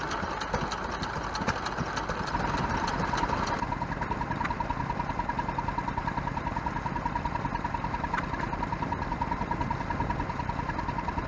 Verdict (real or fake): real